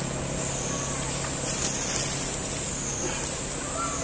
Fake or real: real